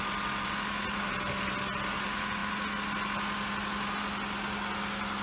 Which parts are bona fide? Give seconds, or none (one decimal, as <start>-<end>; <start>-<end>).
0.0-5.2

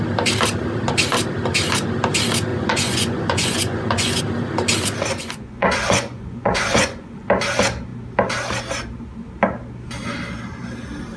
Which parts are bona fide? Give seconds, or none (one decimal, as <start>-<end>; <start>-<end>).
0.0-2.5; 4.2-5.1; 7.3-11.2

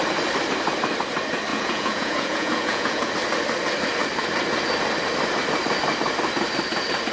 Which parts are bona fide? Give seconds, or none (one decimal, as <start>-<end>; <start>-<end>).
0.0-1.5; 3.1-7.1

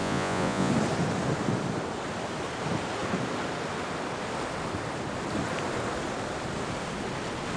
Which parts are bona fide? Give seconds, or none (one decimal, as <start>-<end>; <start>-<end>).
0.7-7.6